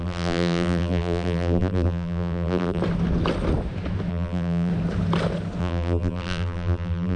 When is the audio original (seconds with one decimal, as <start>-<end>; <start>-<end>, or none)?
2.8-4.1; 4.7-5.6